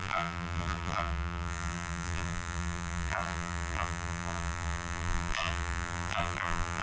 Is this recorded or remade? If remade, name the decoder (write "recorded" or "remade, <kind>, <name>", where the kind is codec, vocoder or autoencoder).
remade, vocoder, BigVGAN v2